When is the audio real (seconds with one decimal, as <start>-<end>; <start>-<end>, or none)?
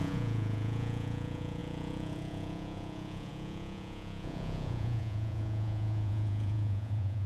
none